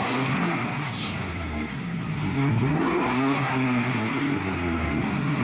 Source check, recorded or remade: remade